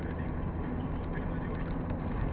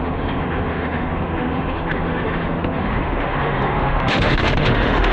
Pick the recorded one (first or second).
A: first